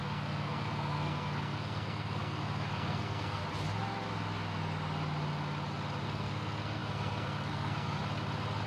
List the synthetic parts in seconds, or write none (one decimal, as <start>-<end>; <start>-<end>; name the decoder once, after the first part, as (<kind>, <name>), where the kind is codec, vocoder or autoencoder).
0.0-3.4 (codec, SNAC); 6.0-8.0